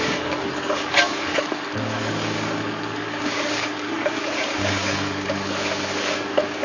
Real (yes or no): no